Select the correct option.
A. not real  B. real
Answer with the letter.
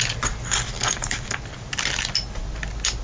B